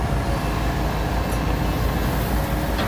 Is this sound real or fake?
real